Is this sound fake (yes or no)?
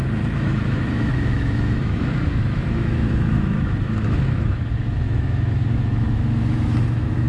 yes